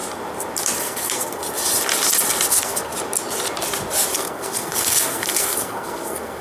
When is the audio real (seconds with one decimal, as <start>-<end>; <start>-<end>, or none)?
0.0-0.8; 1.4-2.5; 2.9-4.1